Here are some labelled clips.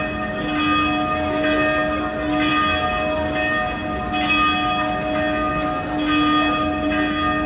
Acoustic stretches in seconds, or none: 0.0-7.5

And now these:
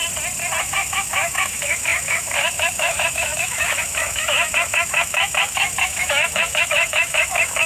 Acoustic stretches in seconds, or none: 0.0-0.6